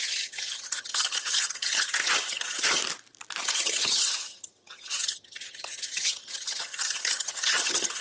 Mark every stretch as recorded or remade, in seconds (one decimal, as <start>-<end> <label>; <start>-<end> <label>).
0.0-2.8 remade; 2.8-3.4 recorded; 3.4-8.0 remade